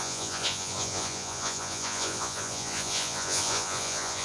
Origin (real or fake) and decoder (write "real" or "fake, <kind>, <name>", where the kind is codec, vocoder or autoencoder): fake, vocoder, Vocos